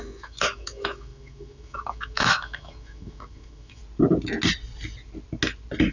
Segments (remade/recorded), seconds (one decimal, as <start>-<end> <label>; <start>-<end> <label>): 0.0-3.8 remade; 3.8-5.9 recorded